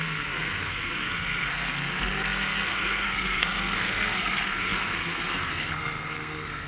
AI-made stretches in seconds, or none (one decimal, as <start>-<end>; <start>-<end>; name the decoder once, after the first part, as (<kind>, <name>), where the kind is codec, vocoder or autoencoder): 0.0-6.7 (codec, SNAC)